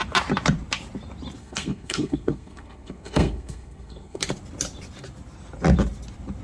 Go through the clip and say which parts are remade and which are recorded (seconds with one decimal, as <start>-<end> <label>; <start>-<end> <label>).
0.0-1.4 recorded; 1.4-4.2 remade; 4.2-6.4 recorded